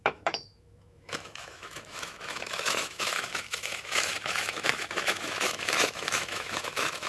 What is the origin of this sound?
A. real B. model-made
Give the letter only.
B